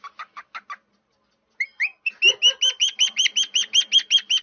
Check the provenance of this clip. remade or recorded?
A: recorded